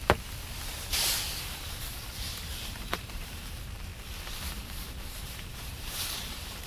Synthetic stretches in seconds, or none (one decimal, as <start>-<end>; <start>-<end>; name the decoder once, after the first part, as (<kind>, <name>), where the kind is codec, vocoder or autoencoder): 2.1-3.9 (vocoder, BigVGAN v2); 5.0-6.7